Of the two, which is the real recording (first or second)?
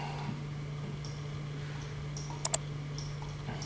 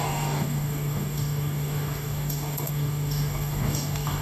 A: first